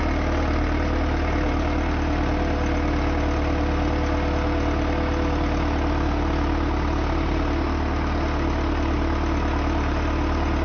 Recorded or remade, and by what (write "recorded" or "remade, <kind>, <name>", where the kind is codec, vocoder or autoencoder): recorded